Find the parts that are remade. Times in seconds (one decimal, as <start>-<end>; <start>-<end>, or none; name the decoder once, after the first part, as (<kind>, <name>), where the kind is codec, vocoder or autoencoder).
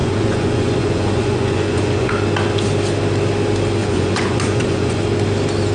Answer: 0.0-2.1 (vocoder, Vocos); 3.8-5.0